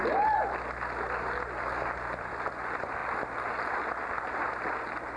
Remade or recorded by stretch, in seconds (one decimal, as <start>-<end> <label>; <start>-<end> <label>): 0.0-5.2 recorded